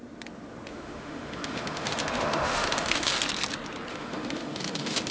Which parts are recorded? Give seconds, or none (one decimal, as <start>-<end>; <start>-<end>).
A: 0.0-0.7; 3.1-3.9